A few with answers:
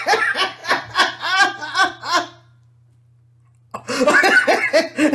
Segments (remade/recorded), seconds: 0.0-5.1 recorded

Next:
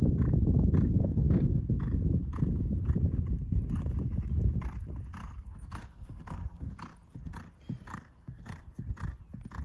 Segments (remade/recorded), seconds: 0.0-1.0 recorded; 1.0-1.6 remade; 1.6-5.2 recorded; 5.2-6.7 remade; 6.7-7.9 recorded; 7.9-8.7 remade; 8.7-9.6 recorded

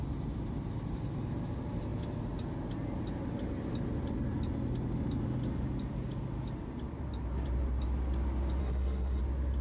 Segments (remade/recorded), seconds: 0.0-8.6 recorded; 8.6-9.2 remade; 9.2-9.6 recorded

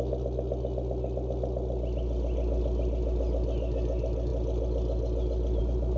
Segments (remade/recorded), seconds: 0.0-6.0 recorded

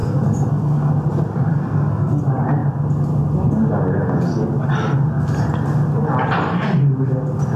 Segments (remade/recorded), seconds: 0.0-0.9 remade; 0.9-1.5 recorded; 1.5-2.2 remade; 2.2-7.6 recorded

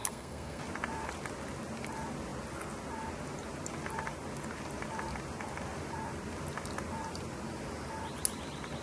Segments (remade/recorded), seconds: 0.0-0.6 remade; 0.6-8.8 recorded

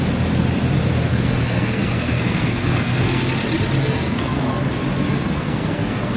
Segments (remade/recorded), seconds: 0.0-1.1 recorded; 1.1-3.2 remade; 3.2-3.8 recorded; 3.8-4.5 remade; 4.5-5.1 recorded; 5.1-6.2 remade